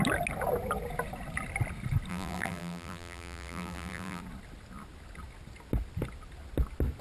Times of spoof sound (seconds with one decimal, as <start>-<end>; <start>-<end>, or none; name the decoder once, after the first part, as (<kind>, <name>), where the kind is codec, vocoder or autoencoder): 2.1-4.2 (vocoder, BigVGAN v2)

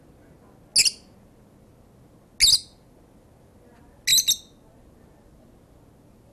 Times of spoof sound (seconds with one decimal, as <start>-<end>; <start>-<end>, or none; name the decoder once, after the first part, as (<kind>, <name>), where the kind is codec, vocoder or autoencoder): none

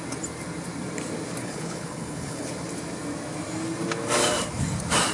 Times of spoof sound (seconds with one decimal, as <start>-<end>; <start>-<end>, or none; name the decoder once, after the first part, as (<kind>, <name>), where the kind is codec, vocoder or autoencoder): 1.4-2.5 (codec, HILCodec)

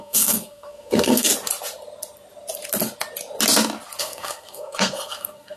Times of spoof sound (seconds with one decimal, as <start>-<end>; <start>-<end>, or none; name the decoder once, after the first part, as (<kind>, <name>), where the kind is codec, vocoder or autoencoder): 0.0-1.3 (codec, SNAC); 4.0-5.6

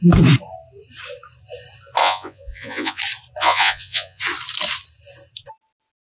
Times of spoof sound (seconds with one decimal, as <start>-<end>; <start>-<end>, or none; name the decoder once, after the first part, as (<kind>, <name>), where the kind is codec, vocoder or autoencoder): 2.0-3.0 (vocoder, Vocos); 3.4-4.2

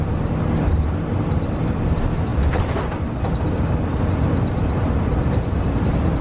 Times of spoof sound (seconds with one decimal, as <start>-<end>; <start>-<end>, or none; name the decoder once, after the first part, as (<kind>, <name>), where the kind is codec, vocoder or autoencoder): none

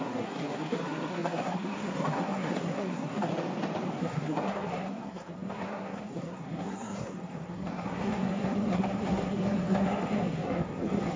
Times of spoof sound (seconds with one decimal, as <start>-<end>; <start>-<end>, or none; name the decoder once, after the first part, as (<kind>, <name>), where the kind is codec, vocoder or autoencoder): 0.0-3.3 (codec, SNAC); 4.0-11.2